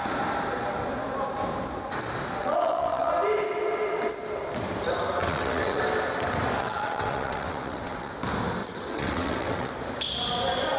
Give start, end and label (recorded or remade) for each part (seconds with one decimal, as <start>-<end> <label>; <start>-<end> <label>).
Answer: 0.0-2.4 recorded; 2.4-3.1 remade; 3.1-5.2 recorded; 5.2-5.8 remade; 5.8-6.6 recorded; 6.6-8.1 remade; 8.1-8.6 recorded; 8.6-9.7 remade; 9.7-10.8 recorded